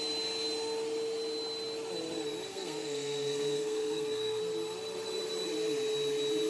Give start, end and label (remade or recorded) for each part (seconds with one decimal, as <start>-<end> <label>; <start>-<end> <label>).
0.0-2.5 recorded; 2.5-4.4 remade; 4.4-6.5 recorded